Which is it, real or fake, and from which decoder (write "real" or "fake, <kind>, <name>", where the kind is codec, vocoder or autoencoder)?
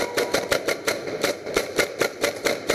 fake, vocoder, BigVGAN v2